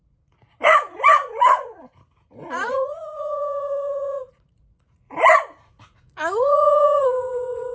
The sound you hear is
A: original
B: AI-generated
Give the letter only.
B